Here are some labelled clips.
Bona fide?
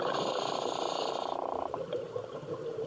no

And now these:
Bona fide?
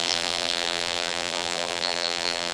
no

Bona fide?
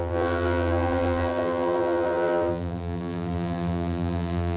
no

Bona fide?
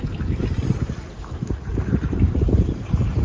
no